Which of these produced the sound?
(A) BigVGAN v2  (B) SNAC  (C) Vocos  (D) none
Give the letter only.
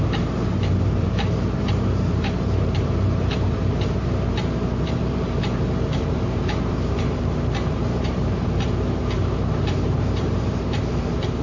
A